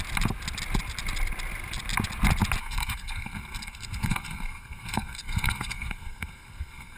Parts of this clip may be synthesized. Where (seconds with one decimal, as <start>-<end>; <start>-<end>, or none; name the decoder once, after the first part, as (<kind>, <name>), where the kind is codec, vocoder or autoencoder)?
2.6-7.0 (codec, SNAC)